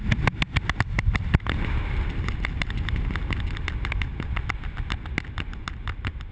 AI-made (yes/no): no